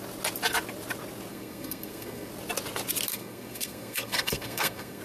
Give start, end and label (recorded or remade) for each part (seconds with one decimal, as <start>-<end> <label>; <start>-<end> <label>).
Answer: 0.0-1.3 recorded; 1.3-2.3 remade; 2.3-3.1 recorded; 3.1-5.0 remade